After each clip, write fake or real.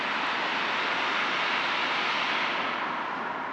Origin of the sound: real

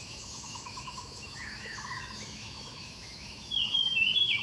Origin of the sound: fake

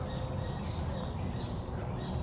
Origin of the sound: fake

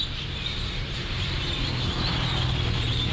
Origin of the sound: fake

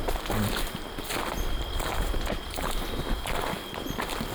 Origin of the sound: real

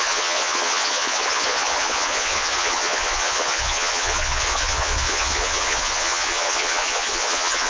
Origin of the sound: fake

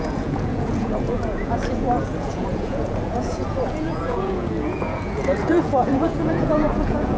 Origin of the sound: fake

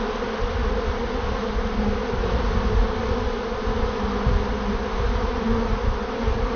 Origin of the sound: real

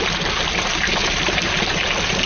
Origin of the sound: real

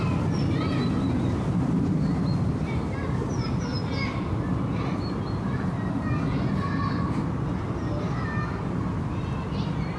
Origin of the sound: real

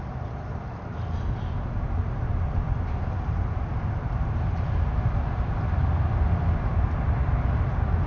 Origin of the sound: real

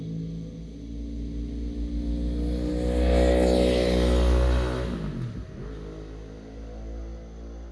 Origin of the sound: real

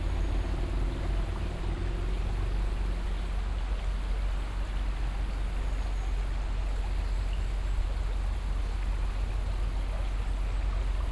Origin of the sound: real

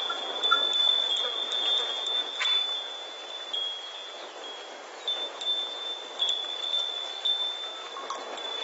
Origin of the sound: real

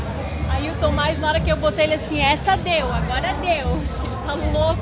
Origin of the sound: real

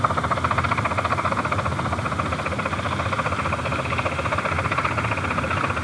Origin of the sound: real